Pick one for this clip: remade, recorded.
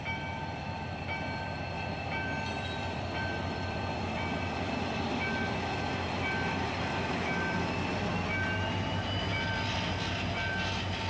recorded